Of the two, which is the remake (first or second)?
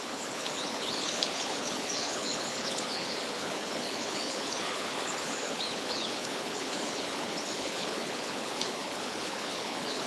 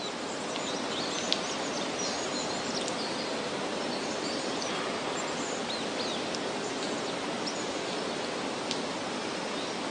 first